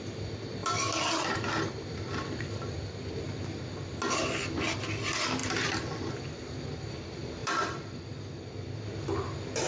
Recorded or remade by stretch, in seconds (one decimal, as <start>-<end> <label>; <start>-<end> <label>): 0.0-0.6 recorded; 0.6-2.7 remade; 2.7-5.4 recorded; 5.4-6.1 remade; 6.1-7.4 recorded; 7.4-8.0 remade; 8.0-9.7 recorded